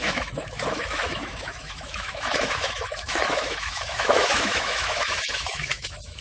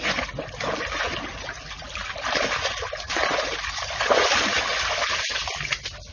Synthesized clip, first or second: first